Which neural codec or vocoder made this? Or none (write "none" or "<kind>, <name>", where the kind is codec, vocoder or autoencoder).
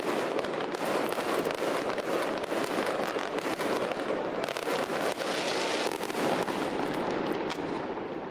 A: none